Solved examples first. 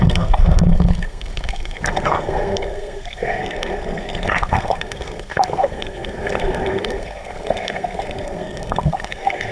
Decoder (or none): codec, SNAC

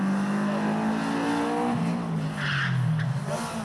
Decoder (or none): none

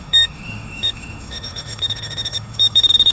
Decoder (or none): autoencoder, DAC-VAE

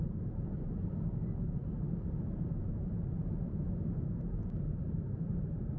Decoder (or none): vocoder, BigVGAN v2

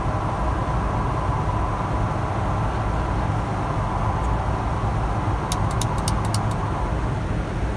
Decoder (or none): none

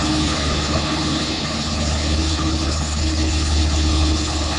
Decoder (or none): codec, HILCodec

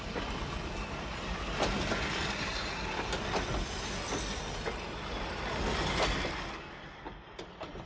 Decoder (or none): none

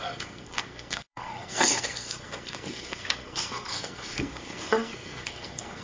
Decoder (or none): codec, SNAC